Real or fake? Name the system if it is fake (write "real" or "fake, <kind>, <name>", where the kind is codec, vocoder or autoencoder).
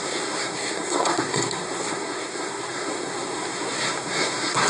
fake, codec, SNAC